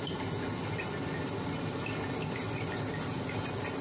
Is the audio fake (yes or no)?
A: no